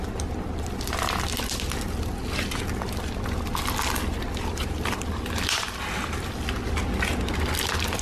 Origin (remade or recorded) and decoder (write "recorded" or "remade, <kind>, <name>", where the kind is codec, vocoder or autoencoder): recorded